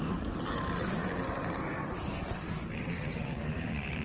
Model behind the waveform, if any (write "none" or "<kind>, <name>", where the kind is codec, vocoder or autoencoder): vocoder, BigVGAN v2